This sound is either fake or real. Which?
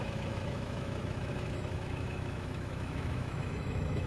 fake